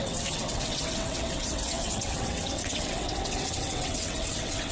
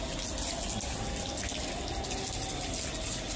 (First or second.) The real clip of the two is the second